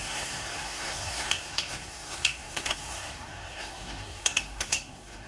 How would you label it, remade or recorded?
remade